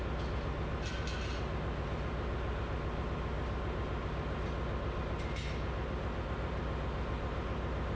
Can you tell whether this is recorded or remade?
recorded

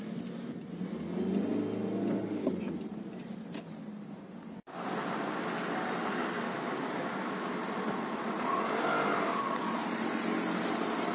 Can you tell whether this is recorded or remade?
recorded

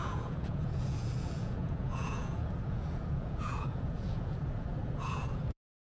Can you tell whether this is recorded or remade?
remade